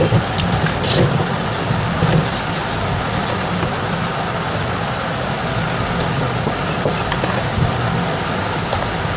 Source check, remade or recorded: recorded